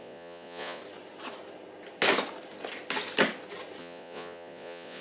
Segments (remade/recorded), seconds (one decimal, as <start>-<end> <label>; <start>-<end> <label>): 0.0-0.8 remade; 0.8-3.8 recorded; 3.8-5.0 remade